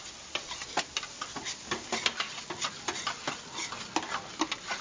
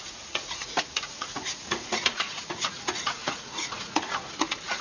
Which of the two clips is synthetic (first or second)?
second